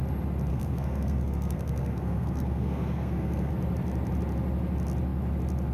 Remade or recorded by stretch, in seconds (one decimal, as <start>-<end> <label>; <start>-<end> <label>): 0.0-0.5 recorded; 0.5-3.5 remade; 3.5-5.7 recorded